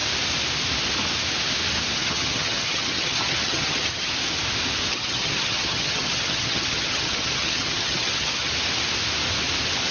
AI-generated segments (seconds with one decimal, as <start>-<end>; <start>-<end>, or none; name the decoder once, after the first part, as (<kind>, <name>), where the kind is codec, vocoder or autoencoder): 2.0-4.1 (vocoder, HiFi-GAN); 4.9-8.5